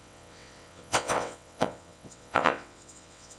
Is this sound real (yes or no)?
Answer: no